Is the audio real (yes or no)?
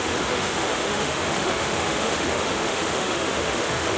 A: no